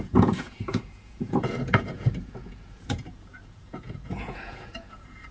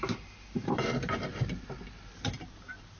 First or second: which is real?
second